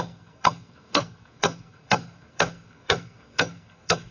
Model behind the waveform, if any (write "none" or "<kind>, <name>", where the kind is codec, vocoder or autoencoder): codec, SNAC